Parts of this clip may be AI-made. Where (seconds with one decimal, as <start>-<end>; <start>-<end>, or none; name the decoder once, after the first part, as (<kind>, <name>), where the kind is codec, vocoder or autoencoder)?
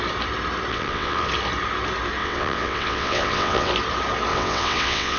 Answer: 0.7-1.3 (vocoder, WaveNeXt); 2.2-3.7; 4.3-5.2